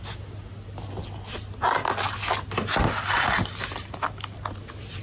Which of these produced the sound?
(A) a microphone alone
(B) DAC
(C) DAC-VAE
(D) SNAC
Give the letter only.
A